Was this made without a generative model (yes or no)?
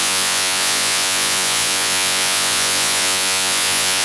no